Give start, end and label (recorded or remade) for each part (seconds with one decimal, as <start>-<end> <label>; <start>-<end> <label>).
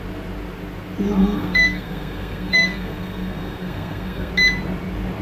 0.0-1.2 recorded; 1.2-4.3 remade; 4.3-5.2 recorded